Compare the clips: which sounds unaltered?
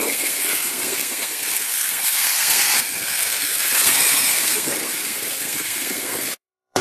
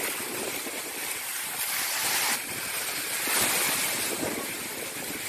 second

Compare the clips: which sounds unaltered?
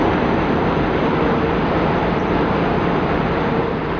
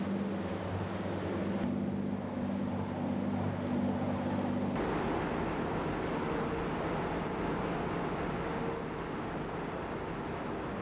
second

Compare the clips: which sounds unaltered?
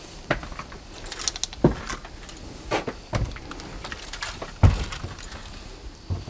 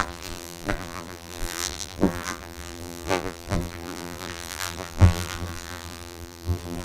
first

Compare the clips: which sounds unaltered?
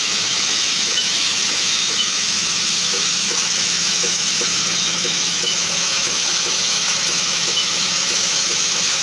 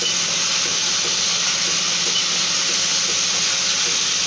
second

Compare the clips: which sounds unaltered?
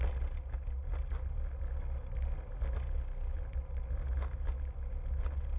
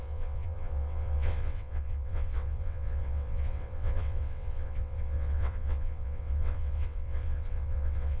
first